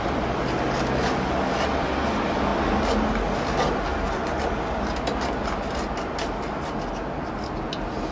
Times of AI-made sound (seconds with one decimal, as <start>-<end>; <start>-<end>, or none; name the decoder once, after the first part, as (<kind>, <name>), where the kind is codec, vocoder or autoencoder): none